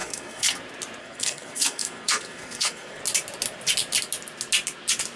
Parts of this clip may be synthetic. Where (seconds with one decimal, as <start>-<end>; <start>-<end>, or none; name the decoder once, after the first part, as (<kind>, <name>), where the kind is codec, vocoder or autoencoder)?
0.0-0.6 (codec, SNAC); 1.0-3.0